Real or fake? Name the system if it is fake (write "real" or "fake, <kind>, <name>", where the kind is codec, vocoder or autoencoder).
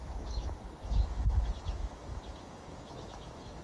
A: fake, autoencoder, DAC-VAE